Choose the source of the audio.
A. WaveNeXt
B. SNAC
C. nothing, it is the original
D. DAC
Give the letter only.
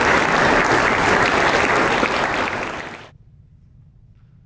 C